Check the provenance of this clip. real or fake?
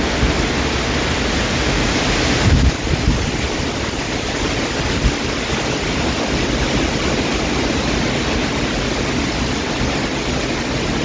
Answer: real